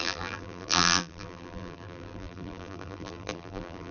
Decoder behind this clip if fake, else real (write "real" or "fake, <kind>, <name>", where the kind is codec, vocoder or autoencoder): fake, vocoder, BigVGAN v2